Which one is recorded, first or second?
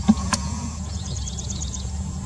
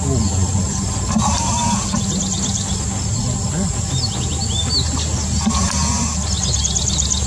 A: second